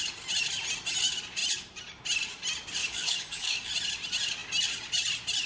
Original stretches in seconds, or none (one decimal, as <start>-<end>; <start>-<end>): 0.0-2.8; 3.7-5.5